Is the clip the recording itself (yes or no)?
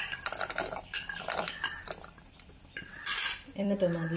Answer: no